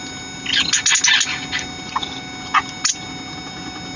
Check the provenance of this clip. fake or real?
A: real